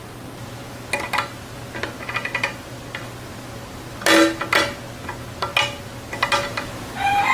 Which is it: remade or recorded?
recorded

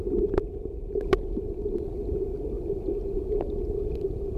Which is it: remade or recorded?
recorded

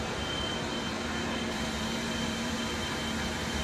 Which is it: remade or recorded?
remade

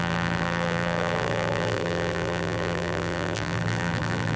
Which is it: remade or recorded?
remade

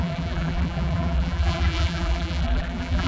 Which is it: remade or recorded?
remade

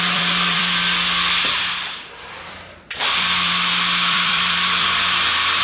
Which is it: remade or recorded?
remade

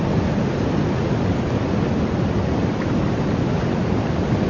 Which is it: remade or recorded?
recorded